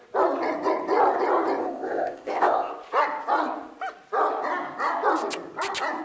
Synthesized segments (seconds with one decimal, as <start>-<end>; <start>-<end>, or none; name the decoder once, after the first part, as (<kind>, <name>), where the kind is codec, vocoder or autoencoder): 1.6-2.7 (codec, ZipCodec)